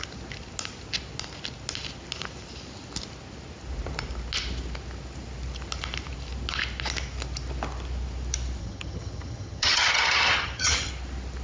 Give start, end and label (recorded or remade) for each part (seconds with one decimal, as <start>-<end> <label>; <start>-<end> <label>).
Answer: 0.0-8.6 recorded; 8.6-10.9 remade; 10.9-11.4 recorded